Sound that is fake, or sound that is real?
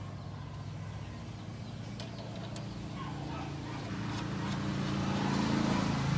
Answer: real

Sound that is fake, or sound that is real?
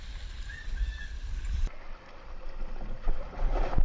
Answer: real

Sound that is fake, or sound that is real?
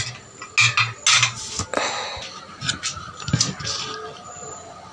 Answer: real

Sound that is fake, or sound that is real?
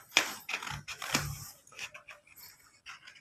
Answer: real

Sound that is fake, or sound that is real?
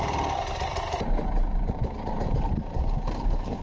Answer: real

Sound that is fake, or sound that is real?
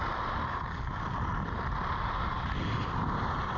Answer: real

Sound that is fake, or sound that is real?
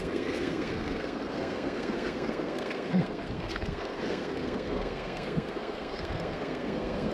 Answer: fake